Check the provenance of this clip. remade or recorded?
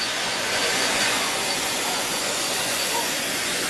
remade